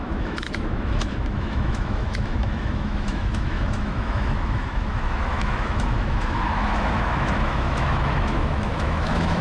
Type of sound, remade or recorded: remade